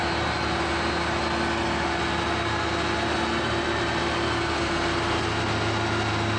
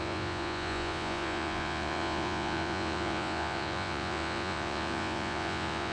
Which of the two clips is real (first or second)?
first